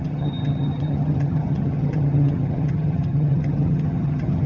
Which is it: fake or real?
fake